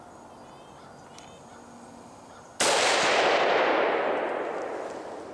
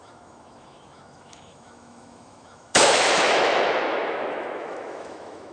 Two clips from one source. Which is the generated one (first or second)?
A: second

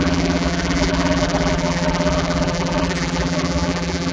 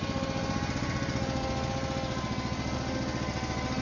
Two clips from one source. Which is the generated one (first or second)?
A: first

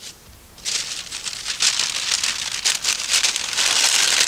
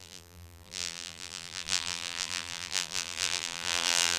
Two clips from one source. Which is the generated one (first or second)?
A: second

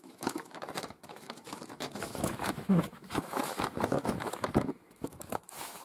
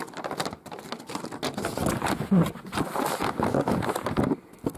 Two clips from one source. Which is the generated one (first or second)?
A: first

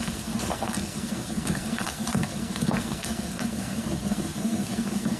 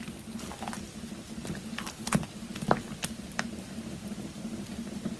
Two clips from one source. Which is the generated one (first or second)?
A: first